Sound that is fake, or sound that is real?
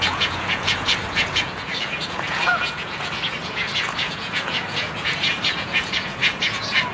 fake